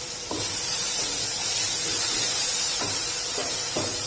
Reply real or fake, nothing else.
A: fake